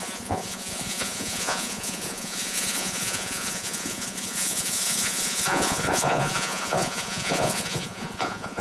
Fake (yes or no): yes